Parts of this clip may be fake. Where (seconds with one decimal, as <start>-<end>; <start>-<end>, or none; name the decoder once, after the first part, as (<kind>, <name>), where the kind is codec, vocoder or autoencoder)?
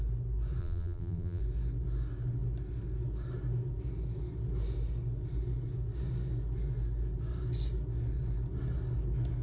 0.6-1.4 (vocoder, BigVGAN v2)